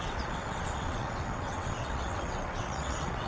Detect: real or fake fake